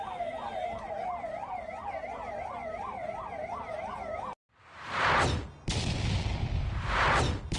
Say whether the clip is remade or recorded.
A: recorded